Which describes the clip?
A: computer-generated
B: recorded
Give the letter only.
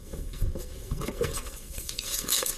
A